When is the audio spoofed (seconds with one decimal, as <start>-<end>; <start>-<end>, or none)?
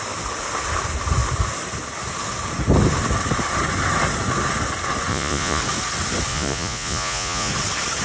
5.1-5.6; 6.3-7.5